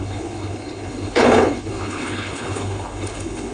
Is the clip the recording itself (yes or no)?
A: no